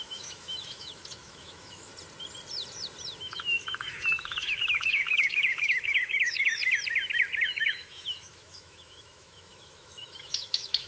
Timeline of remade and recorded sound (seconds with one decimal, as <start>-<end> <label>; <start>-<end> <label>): 0.0-1.9 remade; 1.9-3.2 recorded; 3.2-6.6 remade; 6.6-7.4 recorded; 7.4-10.9 remade